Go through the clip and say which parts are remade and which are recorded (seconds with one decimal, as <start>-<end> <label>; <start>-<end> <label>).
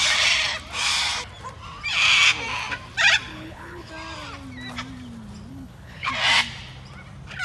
0.0-3.3 recorded; 3.3-3.9 remade; 3.9-5.5 recorded; 5.5-6.1 remade; 6.1-7.4 recorded